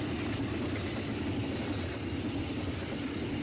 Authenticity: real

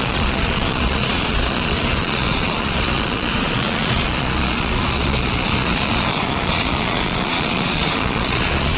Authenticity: fake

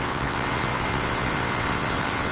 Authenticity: fake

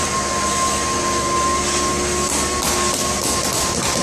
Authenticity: real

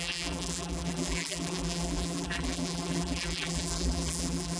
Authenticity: fake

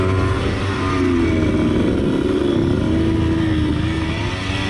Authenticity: real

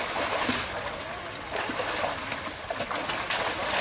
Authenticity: real